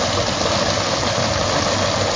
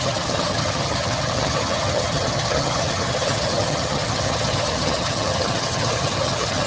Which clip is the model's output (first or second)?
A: second